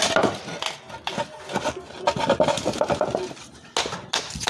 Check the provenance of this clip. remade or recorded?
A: recorded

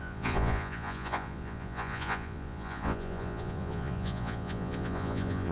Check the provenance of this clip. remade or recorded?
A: remade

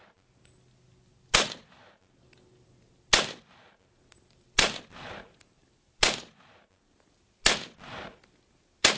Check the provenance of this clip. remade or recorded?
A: recorded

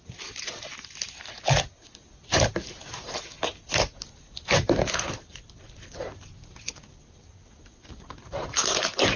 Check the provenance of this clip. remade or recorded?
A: recorded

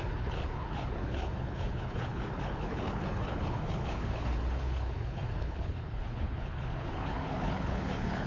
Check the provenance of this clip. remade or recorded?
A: remade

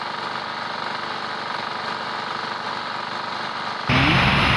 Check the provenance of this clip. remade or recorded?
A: recorded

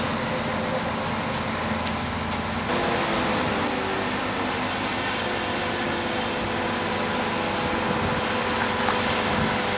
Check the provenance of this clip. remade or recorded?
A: recorded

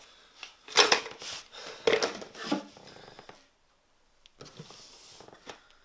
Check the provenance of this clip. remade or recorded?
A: recorded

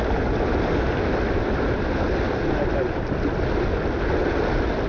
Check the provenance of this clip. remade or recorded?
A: recorded